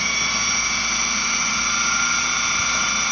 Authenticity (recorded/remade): recorded